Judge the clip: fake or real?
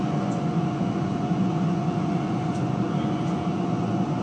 fake